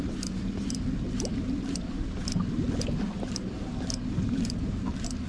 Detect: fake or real real